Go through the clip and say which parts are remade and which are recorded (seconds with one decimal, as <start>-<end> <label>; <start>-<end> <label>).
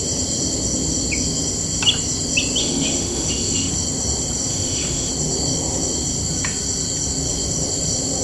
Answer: 0.0-2.6 recorded; 2.6-3.7 remade; 3.7-4.5 recorded; 4.5-5.1 remade; 5.1-8.2 recorded